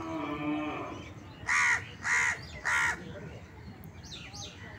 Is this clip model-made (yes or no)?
no